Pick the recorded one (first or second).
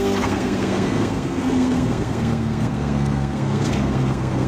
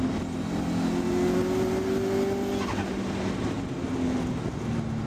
second